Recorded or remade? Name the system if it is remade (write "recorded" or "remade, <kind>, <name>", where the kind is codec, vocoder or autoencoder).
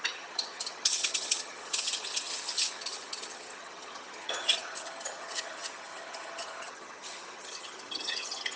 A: remade, vocoder, HiFi-GAN